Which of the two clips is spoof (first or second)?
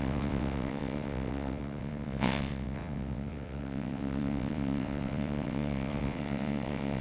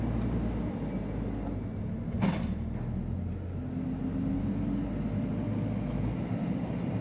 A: first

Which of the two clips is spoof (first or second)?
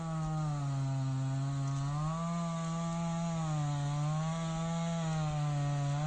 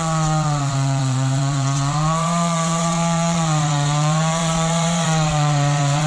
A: second